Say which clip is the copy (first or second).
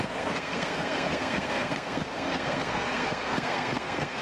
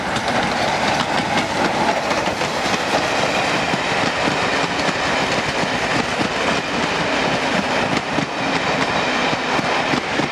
first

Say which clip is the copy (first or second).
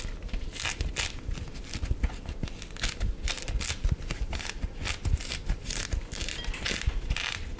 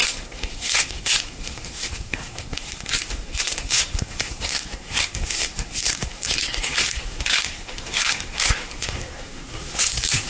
second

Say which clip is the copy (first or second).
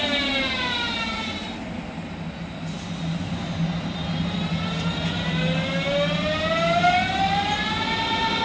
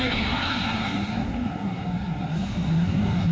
second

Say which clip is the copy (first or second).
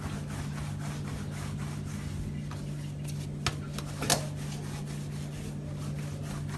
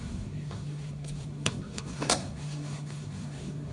second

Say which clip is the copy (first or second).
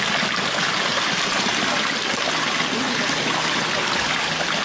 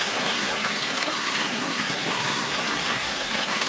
second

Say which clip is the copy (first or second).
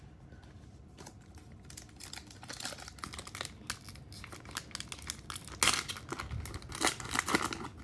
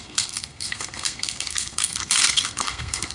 second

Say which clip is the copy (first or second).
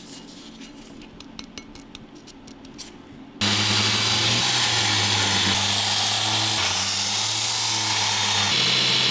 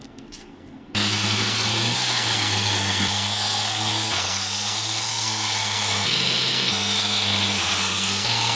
second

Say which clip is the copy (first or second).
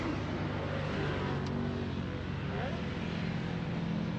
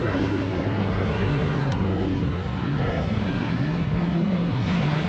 second